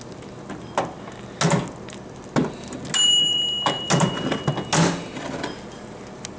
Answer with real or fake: real